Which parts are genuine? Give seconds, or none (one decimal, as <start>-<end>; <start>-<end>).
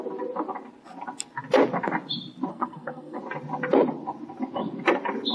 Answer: 0.0-2.5; 3.2-5.3